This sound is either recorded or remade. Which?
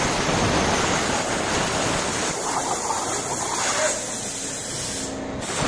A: recorded